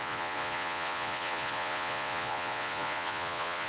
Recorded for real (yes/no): no